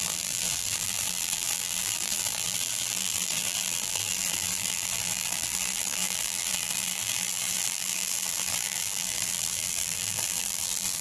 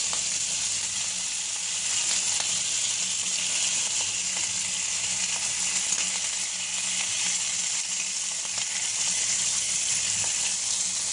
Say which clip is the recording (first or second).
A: second